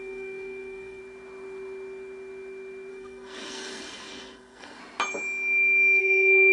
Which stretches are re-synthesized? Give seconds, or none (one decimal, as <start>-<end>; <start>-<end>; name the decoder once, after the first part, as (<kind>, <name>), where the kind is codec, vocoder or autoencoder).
0.0-1.0 (codec, SNAC); 2.9-4.8; 6.0-6.5